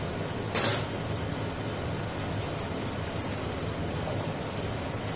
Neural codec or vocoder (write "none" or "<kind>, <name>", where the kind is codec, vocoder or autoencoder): none